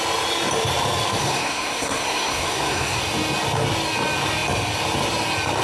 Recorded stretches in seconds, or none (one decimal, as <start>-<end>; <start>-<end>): 0.0-1.2; 3.0-5.6